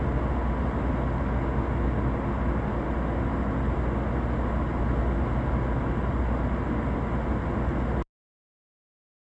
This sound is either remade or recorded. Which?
recorded